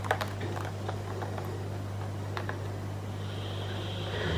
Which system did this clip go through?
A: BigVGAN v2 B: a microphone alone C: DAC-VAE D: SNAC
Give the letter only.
B